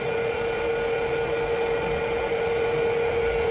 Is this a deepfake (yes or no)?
no